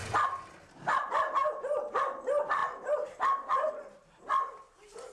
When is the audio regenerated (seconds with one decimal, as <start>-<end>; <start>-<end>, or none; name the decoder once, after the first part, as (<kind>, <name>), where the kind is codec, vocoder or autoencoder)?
none